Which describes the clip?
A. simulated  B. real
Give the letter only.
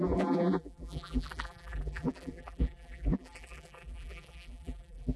A